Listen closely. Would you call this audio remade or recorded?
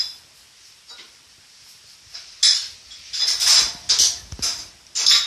recorded